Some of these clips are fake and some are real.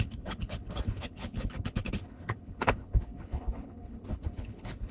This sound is fake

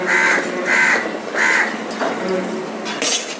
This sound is real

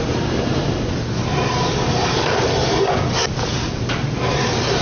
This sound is fake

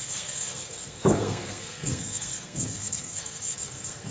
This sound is fake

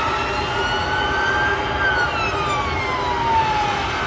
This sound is real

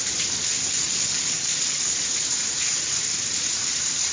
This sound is real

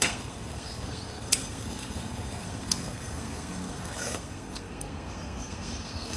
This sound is fake